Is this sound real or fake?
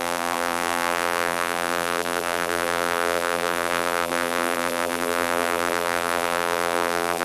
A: fake